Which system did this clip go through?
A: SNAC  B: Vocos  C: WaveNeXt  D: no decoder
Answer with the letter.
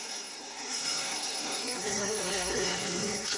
A